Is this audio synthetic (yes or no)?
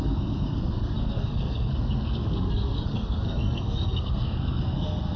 yes